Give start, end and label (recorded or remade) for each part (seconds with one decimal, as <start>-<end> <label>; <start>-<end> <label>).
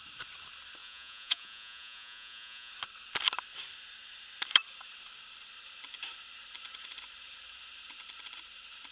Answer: 0.0-0.8 recorded; 0.8-2.7 remade; 2.7-8.9 recorded